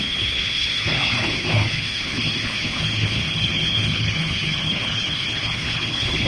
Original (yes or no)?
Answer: no